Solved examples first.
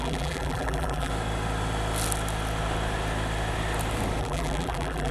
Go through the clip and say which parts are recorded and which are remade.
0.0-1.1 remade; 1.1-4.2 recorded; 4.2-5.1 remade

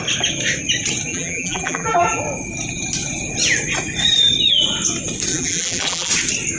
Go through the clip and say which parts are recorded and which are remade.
0.0-1.1 recorded; 1.1-2.2 remade; 2.2-5.3 recorded; 5.3-6.1 remade; 6.1-6.6 recorded

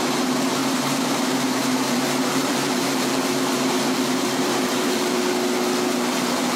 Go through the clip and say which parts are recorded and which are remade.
0.0-0.6 recorded; 0.6-2.0 remade; 2.0-2.4 recorded; 2.4-5.2 remade; 5.2-6.6 recorded

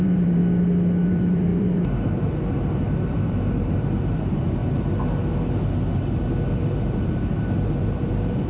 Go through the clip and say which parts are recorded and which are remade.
0.0-0.4 remade; 0.4-1.1 recorded; 1.1-4.6 remade; 4.6-6.6 recorded; 6.6-8.5 remade